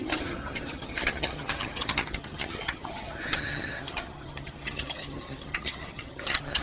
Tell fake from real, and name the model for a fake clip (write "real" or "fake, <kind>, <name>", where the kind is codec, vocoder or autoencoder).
fake, vocoder, HiFi-GAN